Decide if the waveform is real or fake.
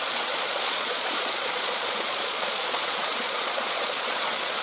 fake